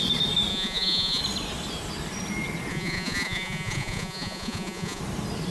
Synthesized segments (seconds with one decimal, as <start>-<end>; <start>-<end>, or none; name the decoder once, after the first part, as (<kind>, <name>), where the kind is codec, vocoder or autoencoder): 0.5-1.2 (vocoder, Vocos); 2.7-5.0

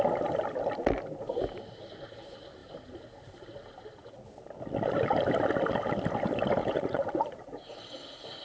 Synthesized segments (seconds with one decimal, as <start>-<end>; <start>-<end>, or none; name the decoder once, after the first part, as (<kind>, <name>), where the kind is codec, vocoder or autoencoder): 6.6-7.6 (vocoder, Vocos)

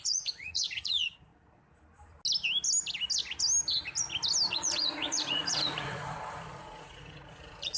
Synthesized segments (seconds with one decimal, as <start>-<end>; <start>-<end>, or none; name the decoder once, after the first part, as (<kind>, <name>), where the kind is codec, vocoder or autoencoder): 0.0-1.3 (vocoder, Vocos); 4.5-7.8

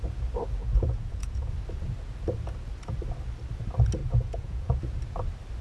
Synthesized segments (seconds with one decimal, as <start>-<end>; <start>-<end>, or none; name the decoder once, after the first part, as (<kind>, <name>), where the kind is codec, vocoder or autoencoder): 0.6-1.5 (vocoder, Vocos); 4.0-4.8

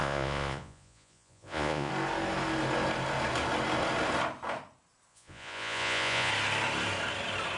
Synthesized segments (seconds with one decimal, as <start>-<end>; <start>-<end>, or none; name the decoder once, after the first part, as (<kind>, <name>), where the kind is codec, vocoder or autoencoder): 0.0-1.9 (vocoder, Vocos); 5.1-6.3

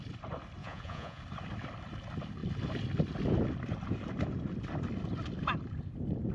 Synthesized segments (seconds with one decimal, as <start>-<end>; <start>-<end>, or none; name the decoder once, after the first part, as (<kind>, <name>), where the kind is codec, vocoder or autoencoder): 0.6-1.2 (vocoder, Vocos)